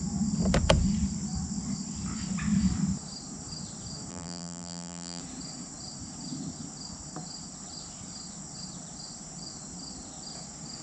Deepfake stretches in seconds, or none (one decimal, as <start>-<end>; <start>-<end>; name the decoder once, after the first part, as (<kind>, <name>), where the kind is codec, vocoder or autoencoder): 4.1-5.2 (vocoder, BigVGAN v2)